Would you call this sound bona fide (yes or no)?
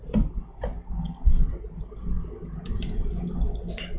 yes